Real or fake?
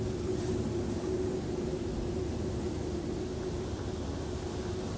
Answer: real